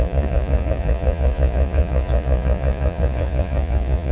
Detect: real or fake fake